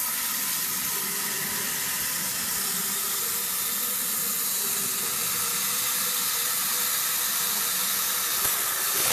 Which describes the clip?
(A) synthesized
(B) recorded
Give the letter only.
B